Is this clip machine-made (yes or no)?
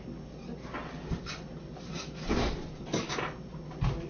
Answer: no